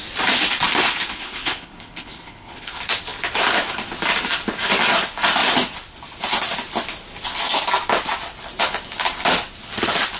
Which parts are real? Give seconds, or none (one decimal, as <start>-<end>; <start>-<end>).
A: 0.0-0.8; 2.8-10.2